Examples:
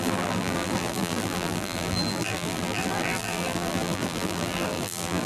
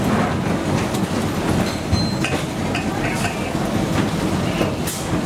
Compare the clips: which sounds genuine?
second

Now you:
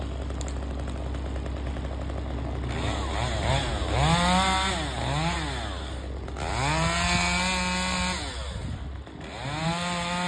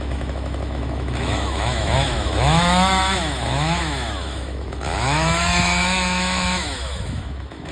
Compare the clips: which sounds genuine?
first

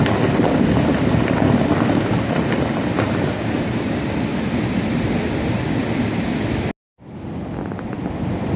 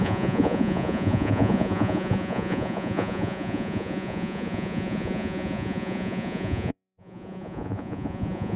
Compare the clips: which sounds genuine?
first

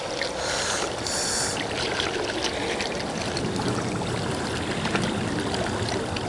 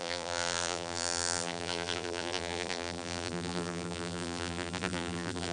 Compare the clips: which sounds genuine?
first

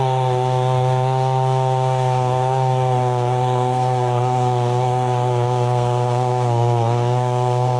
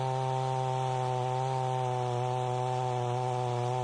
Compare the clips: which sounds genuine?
second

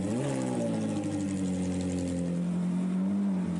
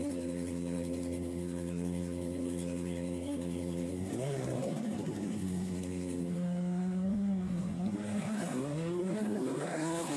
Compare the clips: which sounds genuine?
first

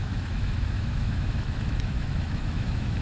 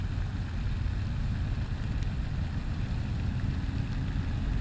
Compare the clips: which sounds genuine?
second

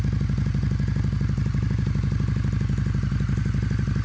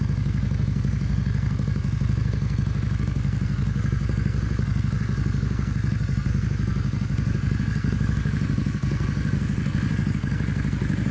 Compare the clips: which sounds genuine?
first